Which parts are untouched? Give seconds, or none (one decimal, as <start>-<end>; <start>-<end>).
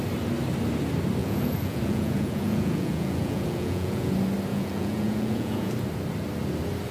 0.0-1.2; 4.1-4.5; 5.7-6.9